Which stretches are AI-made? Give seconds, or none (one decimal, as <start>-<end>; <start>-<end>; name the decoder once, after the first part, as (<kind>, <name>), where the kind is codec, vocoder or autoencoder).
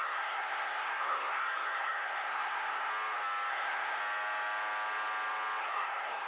0.0-2.9 (codec, SNAC); 3.5-4.0; 5.6-6.3